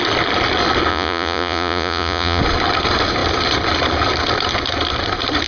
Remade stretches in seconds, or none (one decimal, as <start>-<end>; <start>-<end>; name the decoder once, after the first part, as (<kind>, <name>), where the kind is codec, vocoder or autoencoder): 0.9-2.4 (vocoder, Vocos)